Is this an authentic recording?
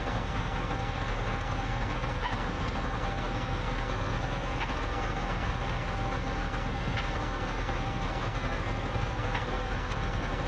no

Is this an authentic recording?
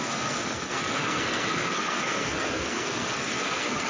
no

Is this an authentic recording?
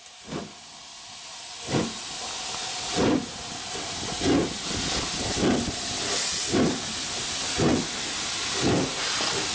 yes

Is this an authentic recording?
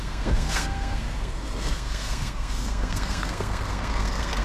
no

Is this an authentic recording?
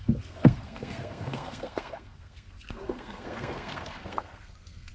no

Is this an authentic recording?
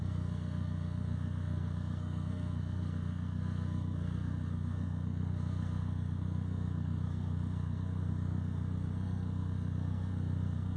no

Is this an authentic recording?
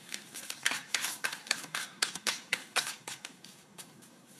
no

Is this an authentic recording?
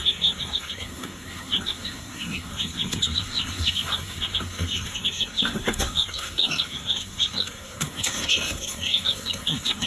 no